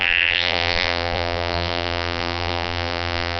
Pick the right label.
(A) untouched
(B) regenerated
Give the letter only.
B